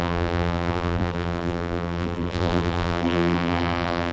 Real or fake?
fake